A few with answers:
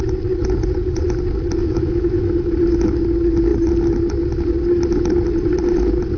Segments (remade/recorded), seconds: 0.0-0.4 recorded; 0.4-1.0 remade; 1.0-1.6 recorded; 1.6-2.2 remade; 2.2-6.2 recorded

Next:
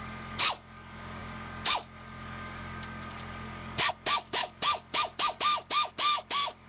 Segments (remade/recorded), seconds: 0.0-6.7 remade

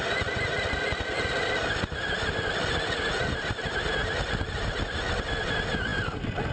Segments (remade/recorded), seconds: 0.0-6.5 recorded

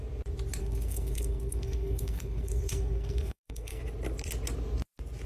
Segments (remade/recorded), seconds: 0.0-0.6 recorded; 0.6-3.8 remade; 3.8-5.3 recorded